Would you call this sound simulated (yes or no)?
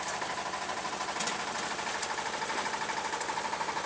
no